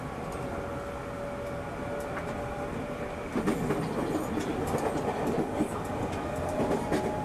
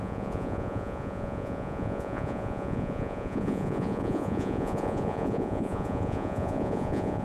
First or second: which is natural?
first